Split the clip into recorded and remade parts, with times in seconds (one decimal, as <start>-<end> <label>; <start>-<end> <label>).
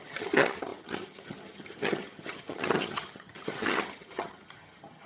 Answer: 0.0-5.1 remade